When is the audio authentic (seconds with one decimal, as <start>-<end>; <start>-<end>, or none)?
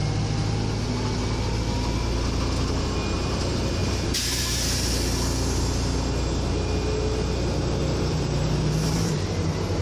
0.0-3.8; 4.9-7.8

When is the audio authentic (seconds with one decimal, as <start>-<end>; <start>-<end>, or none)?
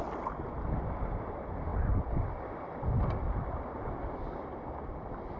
0.0-5.4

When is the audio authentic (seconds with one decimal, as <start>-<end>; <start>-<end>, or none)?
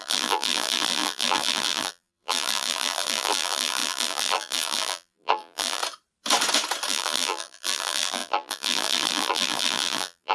5.8-6.9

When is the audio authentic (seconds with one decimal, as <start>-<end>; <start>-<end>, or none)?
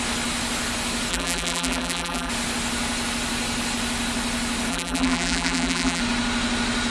0.0-1.1; 2.3-4.7; 6.0-6.9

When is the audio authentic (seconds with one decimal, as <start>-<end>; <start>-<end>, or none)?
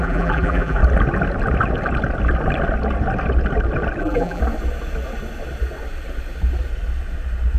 0.8-4.0; 4.4-7.6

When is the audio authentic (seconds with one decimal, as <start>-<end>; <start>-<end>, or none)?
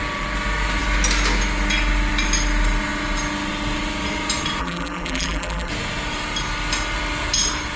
0.0-4.6; 5.7-7.8